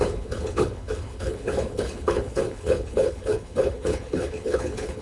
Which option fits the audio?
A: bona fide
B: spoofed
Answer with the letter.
B